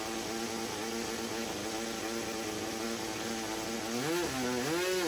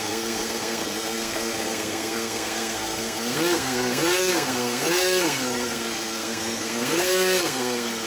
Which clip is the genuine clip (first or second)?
first